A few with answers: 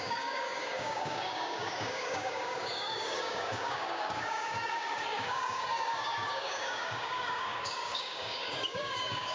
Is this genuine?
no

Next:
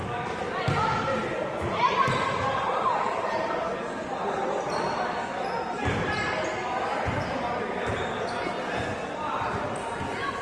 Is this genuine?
yes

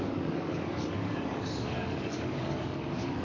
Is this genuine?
no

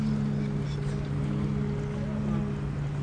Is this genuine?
yes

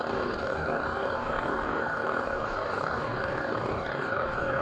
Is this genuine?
no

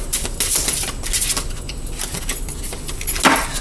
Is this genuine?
yes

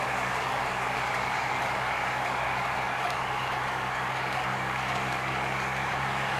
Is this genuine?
no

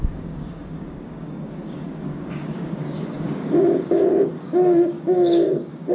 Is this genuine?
no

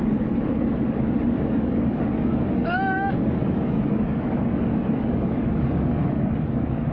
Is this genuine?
no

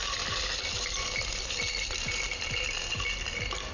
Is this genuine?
yes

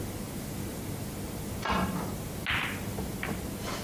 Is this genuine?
yes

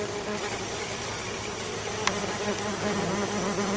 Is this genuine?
yes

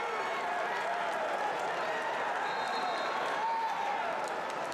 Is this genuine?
yes